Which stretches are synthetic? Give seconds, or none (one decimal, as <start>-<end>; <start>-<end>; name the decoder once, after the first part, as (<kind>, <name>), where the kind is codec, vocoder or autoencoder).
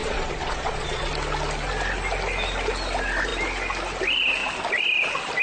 0.0-1.1 (vocoder, Vocos)